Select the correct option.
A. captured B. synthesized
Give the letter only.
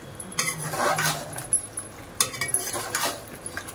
A